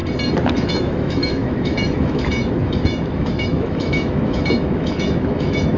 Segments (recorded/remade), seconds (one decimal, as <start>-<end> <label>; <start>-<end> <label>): 0.0-0.5 recorded; 0.5-5.8 remade